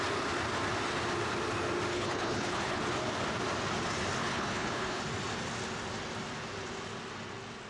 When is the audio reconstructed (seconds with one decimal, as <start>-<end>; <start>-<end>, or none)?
1.9-2.8; 4.2-5.0